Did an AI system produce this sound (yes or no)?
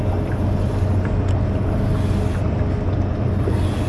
no